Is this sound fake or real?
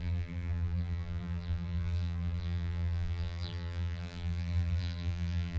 fake